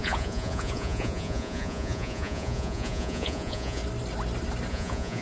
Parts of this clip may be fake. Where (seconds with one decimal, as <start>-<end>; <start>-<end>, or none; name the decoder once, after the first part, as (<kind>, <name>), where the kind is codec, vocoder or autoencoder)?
0.0-3.8 (vocoder, Vocos); 4.7-5.2